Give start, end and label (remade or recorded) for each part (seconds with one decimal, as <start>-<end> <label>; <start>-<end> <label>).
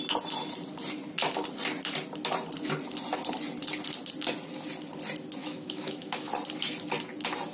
0.0-5.4 recorded; 5.4-6.3 remade; 6.3-7.5 recorded